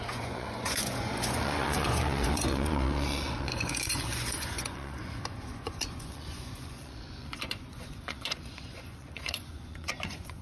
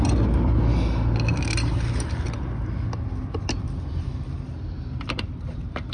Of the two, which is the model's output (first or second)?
first